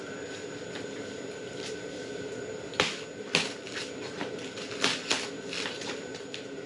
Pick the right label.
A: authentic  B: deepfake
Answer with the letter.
A